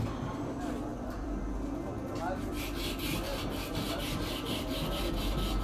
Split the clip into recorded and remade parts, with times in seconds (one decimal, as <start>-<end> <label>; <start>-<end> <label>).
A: 0.0-0.9 recorded; 0.9-1.4 remade; 1.4-3.3 recorded; 3.3-5.6 remade